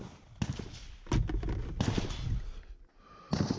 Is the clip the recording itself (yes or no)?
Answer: yes